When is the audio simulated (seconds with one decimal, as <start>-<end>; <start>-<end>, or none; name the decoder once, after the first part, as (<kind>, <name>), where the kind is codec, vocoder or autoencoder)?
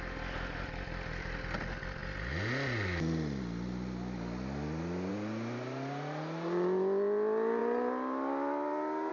none